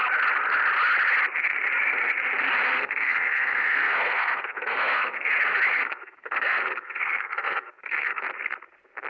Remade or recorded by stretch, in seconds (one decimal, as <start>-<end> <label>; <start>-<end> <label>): 0.0-2.7 recorded; 2.7-5.3 remade; 5.3-5.7 recorded; 5.7-8.2 remade; 8.2-9.1 recorded